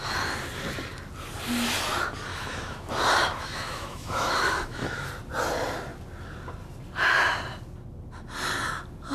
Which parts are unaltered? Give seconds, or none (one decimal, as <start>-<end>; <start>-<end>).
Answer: 0.0-2.3; 2.9-3.3; 5.1-9.1